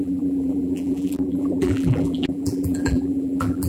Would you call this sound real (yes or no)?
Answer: no